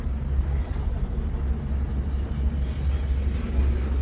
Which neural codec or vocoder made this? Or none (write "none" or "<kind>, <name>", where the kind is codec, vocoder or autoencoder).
none